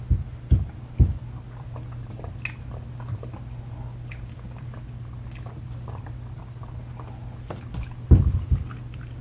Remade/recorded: recorded